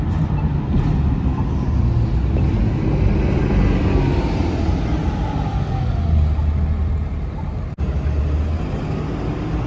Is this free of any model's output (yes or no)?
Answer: yes